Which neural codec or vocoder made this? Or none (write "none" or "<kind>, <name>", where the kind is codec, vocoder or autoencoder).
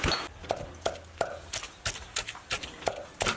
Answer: none